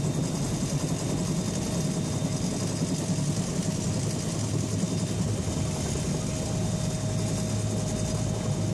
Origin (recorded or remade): recorded